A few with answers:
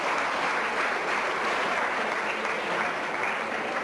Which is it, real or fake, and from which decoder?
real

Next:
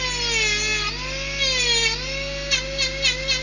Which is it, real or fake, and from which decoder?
real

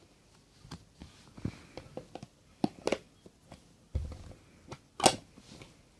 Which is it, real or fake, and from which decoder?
real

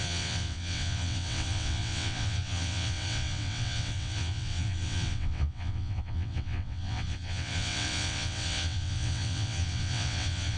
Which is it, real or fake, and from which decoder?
fake, vocoder, WaveNeXt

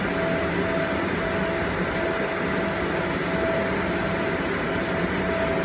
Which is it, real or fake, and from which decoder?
real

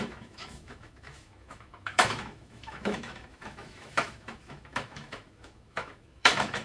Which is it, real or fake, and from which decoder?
fake, autoencoder, DAC-VAE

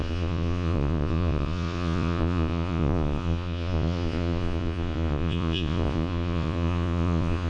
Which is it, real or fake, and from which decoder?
fake, vocoder, Vocos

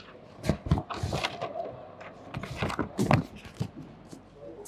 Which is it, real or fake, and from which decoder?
real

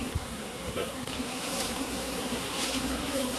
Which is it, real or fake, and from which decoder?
fake, codec, SNAC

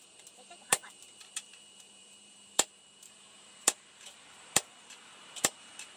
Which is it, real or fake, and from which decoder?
fake, vocoder, BigVGAN v2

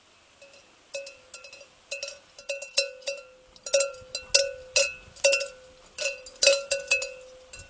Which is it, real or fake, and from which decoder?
real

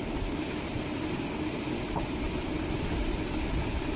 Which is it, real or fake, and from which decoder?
real